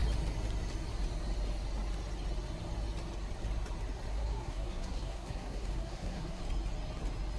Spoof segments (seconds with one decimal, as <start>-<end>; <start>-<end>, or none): 4.1-6.4